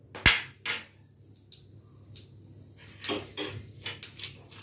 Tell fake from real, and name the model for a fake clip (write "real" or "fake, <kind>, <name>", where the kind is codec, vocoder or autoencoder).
real